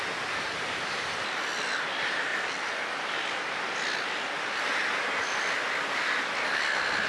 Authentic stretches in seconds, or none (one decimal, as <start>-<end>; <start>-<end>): 0.0-7.1